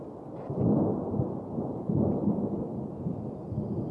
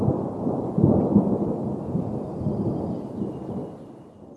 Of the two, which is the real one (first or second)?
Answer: first